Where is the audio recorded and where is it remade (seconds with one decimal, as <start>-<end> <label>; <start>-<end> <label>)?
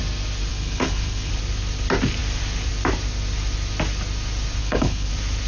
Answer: 0.0-0.5 recorded; 0.5-1.3 remade; 1.3-4.6 recorded; 4.6-5.1 remade; 5.1-5.5 recorded